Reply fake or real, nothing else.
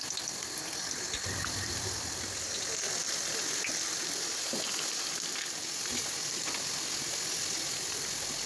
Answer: real